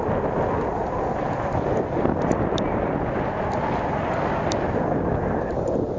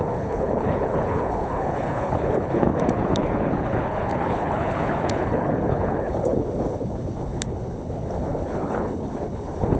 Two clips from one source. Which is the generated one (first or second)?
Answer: second